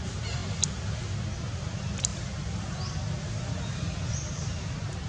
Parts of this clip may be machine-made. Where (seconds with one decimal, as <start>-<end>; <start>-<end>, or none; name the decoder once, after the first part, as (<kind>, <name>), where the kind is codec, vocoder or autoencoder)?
2.1-4.0 (vocoder, BigVGAN v2)